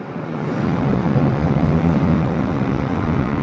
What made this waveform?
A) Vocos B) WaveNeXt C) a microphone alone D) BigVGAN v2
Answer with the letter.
B